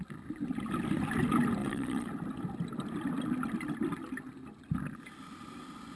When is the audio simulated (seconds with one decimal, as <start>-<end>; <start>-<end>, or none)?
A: 1.6-2.1